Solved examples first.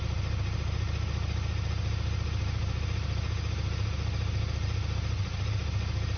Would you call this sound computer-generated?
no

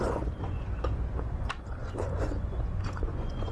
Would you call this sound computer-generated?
yes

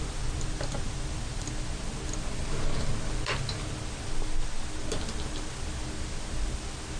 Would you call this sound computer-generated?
no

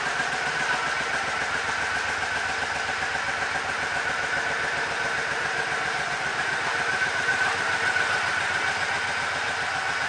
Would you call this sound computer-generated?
no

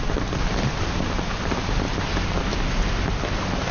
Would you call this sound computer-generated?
no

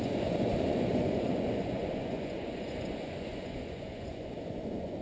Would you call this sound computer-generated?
yes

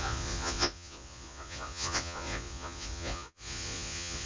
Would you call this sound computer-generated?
yes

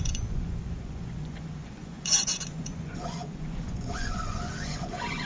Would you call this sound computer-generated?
yes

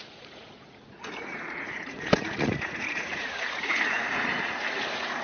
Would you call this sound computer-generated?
yes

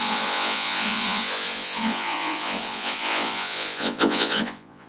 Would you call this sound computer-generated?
yes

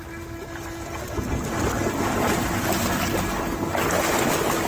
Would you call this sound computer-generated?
no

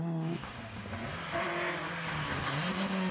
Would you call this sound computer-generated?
no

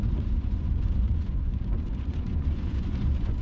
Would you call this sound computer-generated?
yes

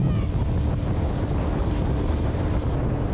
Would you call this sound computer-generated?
no